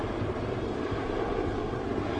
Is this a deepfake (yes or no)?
yes